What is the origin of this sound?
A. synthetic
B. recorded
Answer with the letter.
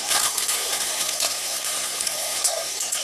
A